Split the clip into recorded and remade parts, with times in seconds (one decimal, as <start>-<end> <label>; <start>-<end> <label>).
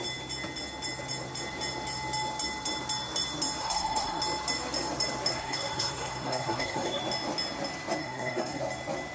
0.0-3.6 recorded; 3.6-4.2 remade; 4.2-5.3 recorded; 5.3-7.0 remade; 7.0-8.0 recorded; 8.0-8.6 remade; 8.6-9.1 recorded